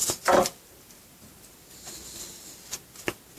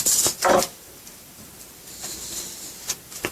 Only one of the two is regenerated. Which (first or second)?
second